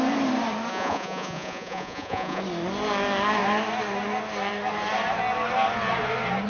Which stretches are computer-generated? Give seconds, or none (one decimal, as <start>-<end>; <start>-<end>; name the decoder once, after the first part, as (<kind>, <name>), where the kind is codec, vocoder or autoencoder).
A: 0.7-2.4 (vocoder, Vocos)